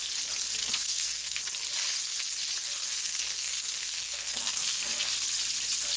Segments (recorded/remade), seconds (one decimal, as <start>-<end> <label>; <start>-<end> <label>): 0.0-0.6 recorded; 0.6-1.4 remade; 1.4-2.8 recorded; 2.8-5.1 remade; 5.1-6.0 recorded